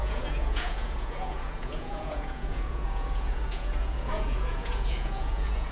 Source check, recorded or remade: remade